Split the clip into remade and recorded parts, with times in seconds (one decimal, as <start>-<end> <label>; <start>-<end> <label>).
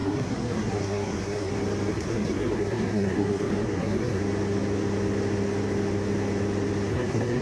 0.0-1.5 remade; 1.5-1.9 recorded; 1.9-4.2 remade; 4.2-6.9 recorded; 6.9-7.4 remade